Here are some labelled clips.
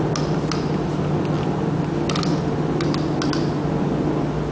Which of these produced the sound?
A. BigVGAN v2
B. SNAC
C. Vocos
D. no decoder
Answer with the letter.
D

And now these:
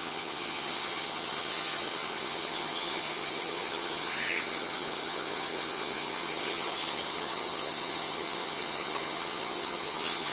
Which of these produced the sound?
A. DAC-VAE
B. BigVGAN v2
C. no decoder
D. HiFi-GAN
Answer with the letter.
D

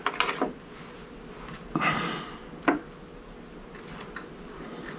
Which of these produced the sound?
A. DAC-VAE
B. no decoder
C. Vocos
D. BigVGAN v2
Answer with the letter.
B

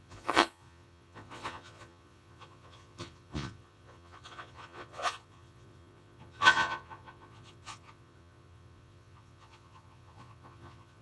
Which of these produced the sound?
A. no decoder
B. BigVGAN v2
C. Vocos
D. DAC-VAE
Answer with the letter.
C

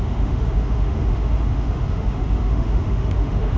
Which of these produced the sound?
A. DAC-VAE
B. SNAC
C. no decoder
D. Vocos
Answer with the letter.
A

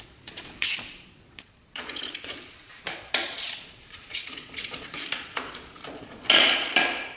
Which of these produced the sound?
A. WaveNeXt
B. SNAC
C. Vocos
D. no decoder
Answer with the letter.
C